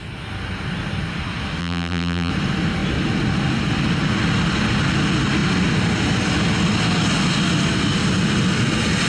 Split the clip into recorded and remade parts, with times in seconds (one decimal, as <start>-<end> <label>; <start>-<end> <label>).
0.0-1.6 recorded; 1.6-2.3 remade; 2.3-9.1 recorded